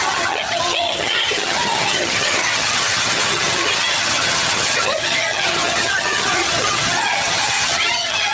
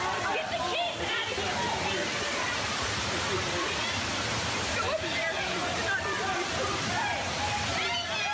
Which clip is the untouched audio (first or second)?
second